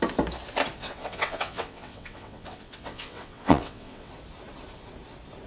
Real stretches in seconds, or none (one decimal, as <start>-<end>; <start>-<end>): 0.0-0.8; 4.1-5.5